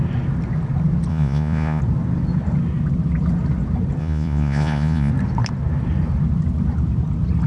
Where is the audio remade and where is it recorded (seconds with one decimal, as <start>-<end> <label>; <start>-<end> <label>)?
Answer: 0.0-1.1 recorded; 1.1-1.8 remade; 1.8-4.0 recorded; 4.0-5.1 remade; 5.1-7.5 recorded